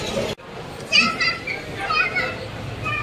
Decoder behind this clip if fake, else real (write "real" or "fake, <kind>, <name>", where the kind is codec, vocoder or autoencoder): real